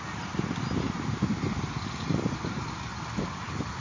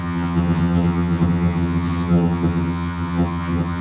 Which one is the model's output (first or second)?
second